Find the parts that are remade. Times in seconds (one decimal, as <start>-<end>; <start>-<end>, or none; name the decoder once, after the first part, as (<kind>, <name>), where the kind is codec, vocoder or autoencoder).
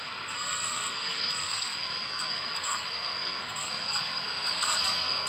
0.0-5.3 (codec, SNAC)